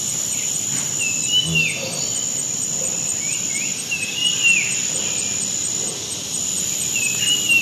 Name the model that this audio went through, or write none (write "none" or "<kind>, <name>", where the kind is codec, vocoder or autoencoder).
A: none